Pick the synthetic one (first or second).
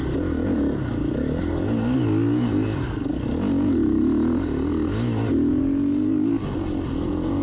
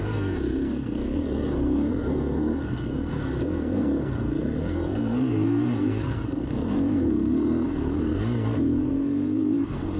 second